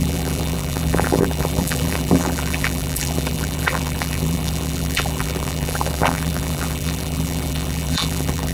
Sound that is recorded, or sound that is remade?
remade